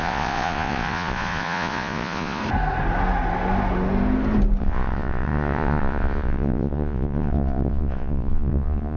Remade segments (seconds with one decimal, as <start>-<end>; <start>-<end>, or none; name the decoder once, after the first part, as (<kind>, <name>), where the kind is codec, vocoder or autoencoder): 0.0-2.4 (vocoder, Vocos); 4.6-9.0